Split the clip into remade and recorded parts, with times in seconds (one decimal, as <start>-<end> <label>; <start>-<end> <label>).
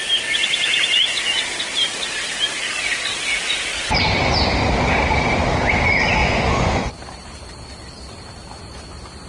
0.0-6.2 recorded; 6.2-6.9 remade; 6.9-9.3 recorded